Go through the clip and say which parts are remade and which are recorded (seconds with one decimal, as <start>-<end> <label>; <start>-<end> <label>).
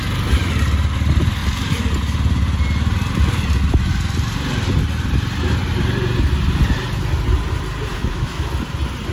0.0-7.9 recorded; 7.9-8.5 remade; 8.5-9.1 recorded